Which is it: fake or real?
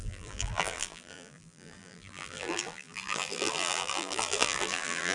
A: fake